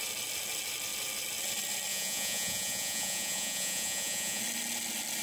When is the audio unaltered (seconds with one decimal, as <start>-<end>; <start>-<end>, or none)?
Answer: 0.0-1.9; 4.4-5.2